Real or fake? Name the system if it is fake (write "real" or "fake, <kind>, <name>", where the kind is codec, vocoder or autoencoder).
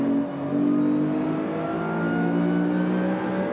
real